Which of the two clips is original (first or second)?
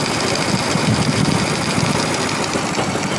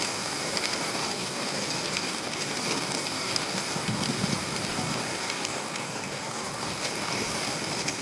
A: first